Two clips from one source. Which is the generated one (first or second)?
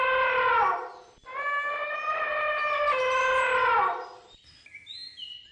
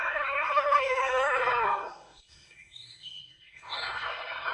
second